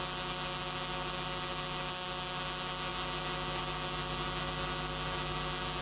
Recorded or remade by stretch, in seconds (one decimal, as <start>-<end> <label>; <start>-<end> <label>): 0.0-5.8 recorded